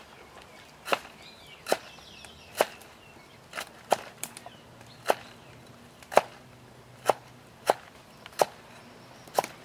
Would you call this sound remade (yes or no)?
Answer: yes